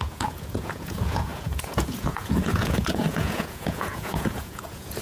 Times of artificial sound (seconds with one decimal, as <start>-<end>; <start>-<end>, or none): 0.0-5.0